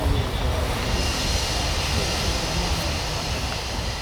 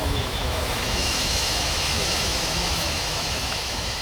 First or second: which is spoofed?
second